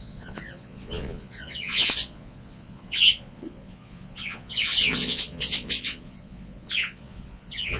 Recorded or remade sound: remade